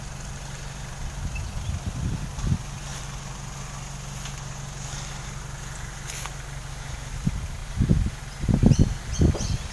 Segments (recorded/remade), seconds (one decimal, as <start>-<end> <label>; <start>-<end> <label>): 0.0-9.7 recorded